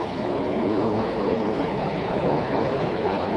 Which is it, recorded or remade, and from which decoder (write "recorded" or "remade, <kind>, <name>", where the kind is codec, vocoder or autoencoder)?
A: remade, codec, HILCodec